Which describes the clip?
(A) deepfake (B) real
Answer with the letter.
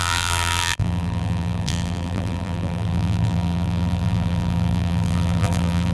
A